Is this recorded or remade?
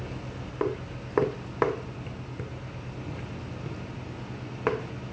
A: recorded